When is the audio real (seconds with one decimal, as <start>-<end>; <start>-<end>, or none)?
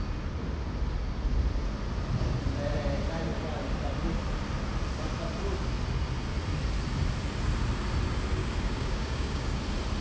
0.0-8.4; 9.6-10.0